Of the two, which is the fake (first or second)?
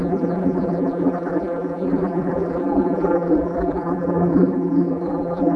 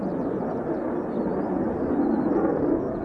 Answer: first